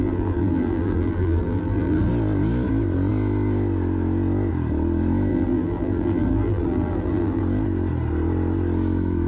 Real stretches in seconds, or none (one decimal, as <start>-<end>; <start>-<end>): 2.1-5.3; 7.4-9.3